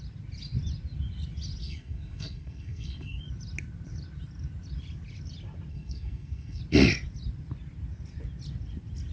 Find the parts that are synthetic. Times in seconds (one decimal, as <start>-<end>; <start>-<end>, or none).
1.6-3.2; 5.7-6.6